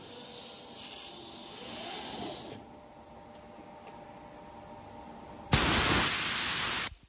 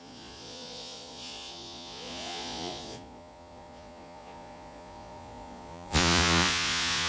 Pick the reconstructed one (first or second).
second